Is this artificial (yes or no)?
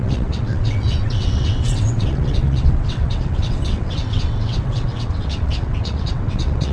yes